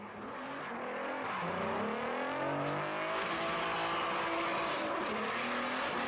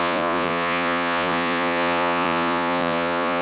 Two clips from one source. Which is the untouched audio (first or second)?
first